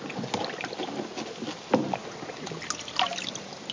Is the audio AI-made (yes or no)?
no